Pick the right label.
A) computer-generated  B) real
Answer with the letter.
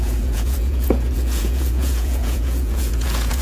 A